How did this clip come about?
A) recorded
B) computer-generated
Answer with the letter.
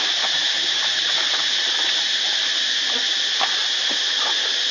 A